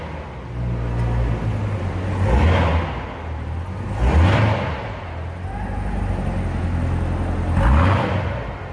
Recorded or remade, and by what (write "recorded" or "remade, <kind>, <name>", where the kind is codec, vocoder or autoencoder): recorded